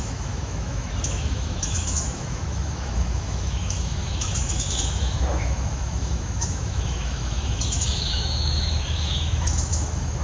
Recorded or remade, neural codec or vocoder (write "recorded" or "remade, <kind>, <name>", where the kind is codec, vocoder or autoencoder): remade, autoencoder, DAC-VAE